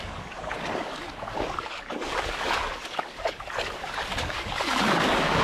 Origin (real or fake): fake